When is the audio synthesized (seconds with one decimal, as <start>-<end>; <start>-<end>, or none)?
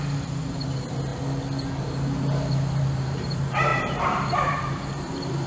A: 0.0-1.1; 2.5-5.5